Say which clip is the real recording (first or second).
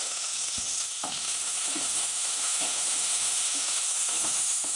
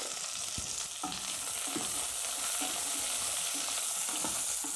second